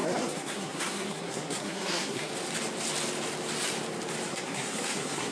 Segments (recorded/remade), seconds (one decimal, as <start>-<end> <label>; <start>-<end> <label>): 0.0-2.3 remade; 2.3-4.3 recorded; 4.3-5.3 remade